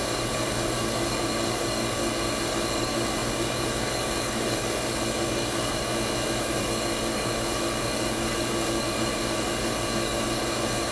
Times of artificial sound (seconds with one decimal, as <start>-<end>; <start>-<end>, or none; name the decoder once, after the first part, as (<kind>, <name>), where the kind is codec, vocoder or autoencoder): 0.0-5.9 (codec, DAC); 6.4-10.9